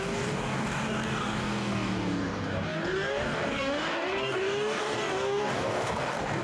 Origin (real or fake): fake